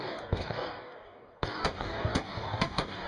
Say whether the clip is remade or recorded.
remade